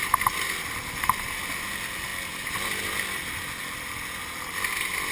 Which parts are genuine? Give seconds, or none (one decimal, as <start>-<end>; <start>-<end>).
0.0-5.1